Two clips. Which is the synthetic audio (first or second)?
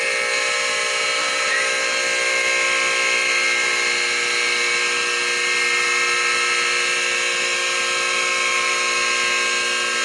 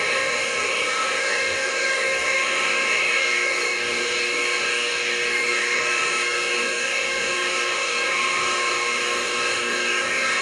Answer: second